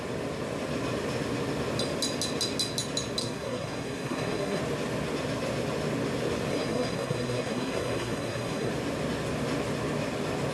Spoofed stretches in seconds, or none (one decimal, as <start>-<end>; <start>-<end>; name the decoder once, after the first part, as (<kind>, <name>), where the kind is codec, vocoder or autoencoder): 3.2-4.6 (codec, SNAC); 6.5-8.7

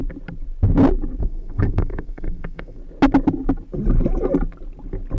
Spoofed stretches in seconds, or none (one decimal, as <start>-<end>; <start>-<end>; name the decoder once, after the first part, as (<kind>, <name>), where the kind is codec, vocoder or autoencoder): 1.2-2.8 (codec, SNAC)

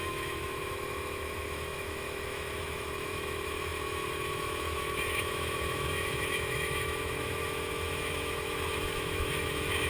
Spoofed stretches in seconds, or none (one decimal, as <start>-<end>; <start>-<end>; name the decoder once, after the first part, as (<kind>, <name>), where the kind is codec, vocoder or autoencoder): 0.0-9.9 (autoencoder, DAC-VAE)

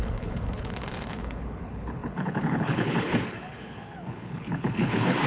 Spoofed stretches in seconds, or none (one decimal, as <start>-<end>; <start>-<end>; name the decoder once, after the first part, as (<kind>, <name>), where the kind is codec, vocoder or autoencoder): 0.0-5.3 (codec, HILCodec)